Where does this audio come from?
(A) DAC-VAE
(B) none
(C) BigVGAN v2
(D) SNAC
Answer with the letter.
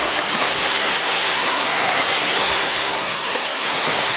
D